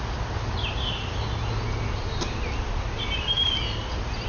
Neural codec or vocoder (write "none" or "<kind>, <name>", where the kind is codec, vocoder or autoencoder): none